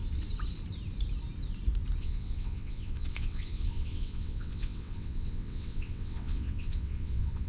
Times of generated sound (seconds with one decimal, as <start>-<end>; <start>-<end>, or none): 2.0-7.5